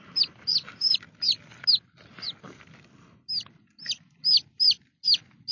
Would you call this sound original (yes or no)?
yes